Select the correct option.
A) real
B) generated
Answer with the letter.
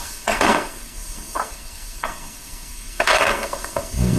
B